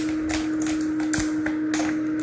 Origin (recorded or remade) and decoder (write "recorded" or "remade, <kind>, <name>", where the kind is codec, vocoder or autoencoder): recorded